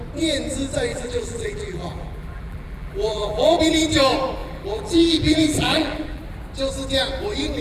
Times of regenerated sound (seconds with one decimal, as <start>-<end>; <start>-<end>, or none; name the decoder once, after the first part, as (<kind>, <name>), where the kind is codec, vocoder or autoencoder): 0.9-3.6 (vocoder, BigVGAN v2); 4.4-6.2